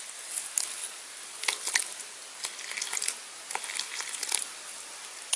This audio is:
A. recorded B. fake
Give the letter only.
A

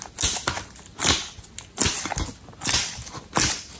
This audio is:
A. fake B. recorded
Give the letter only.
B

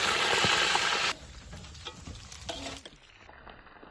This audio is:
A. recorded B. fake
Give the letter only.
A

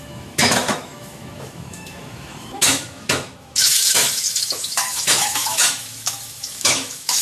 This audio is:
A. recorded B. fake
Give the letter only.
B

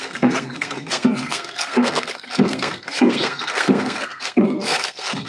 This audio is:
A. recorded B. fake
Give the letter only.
B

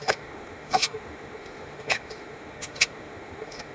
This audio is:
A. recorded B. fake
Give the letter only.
B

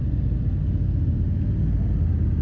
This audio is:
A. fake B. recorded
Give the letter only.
B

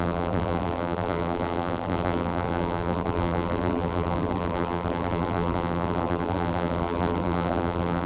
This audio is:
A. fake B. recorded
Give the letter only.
A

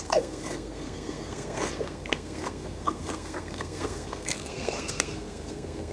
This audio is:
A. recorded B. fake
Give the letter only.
B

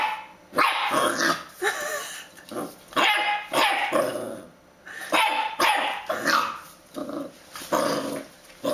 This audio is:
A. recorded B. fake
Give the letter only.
A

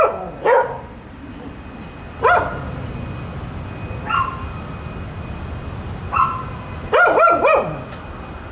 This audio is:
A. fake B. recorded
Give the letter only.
B